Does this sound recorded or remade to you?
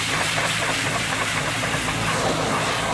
recorded